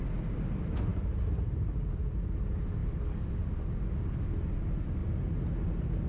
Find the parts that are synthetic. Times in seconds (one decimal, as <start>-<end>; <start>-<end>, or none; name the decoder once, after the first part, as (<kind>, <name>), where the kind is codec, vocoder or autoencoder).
none